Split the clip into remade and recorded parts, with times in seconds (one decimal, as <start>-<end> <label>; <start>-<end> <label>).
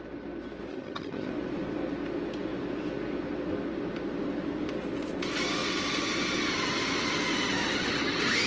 0.0-0.7 recorded; 0.7-1.3 remade; 1.3-8.5 recorded